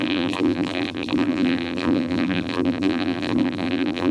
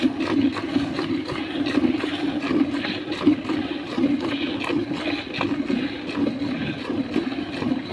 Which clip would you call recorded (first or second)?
second